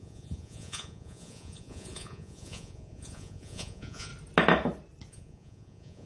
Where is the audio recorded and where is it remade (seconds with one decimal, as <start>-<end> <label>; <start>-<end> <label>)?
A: 0.0-4.1 remade; 4.1-5.1 recorded; 5.1-6.1 remade